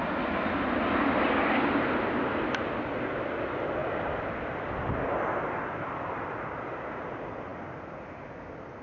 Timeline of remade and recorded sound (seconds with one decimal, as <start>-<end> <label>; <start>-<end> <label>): 0.0-8.8 recorded

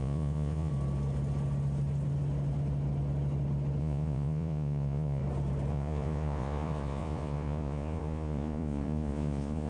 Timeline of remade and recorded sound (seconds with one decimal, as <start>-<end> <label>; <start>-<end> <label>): 0.0-0.7 remade; 0.7-3.8 recorded; 3.8-5.2 remade; 5.2-5.7 recorded; 5.7-9.7 remade

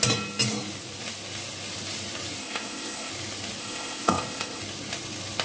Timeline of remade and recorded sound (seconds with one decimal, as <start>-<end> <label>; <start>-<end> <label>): 0.0-2.4 recorded; 2.4-3.1 remade; 3.1-3.6 recorded; 3.6-4.6 remade; 4.6-5.4 recorded